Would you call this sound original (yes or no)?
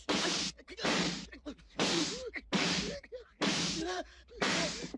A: no